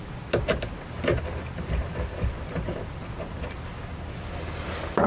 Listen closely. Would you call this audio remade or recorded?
recorded